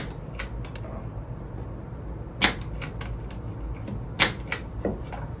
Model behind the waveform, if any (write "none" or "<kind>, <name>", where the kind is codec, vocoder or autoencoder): none